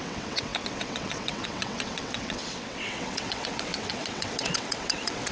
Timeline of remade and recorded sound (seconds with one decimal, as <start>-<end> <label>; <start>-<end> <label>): 0.0-5.3 remade